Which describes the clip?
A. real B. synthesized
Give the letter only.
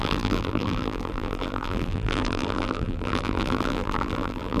B